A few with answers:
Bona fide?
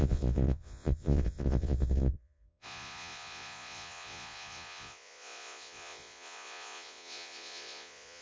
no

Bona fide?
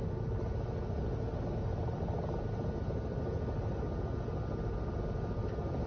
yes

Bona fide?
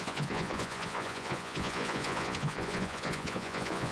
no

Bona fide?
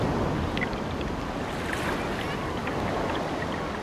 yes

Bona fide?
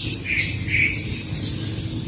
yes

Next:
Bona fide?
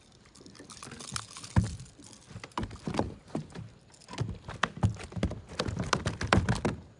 yes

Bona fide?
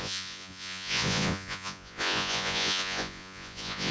no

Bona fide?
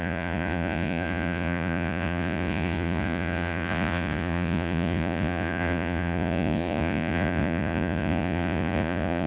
no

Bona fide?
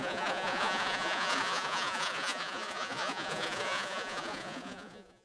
no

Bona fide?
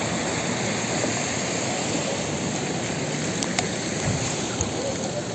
yes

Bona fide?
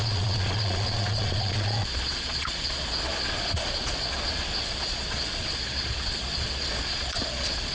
no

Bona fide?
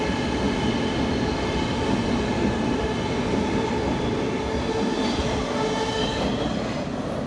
yes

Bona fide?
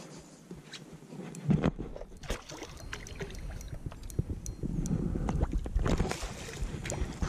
yes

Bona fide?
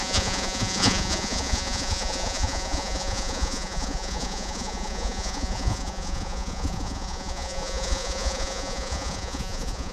no